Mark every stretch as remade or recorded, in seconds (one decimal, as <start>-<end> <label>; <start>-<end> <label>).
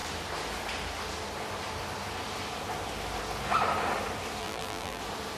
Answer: 0.0-4.4 recorded; 4.4-5.0 remade; 5.0-5.4 recorded